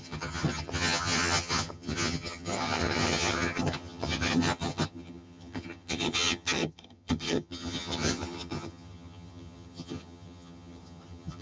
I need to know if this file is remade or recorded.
remade